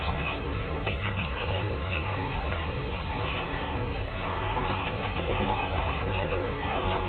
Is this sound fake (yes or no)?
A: yes